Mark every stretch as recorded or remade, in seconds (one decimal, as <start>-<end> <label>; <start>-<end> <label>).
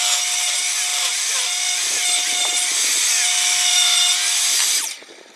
0.0-5.4 recorded